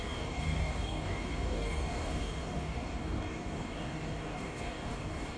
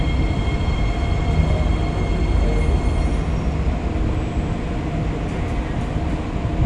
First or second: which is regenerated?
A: first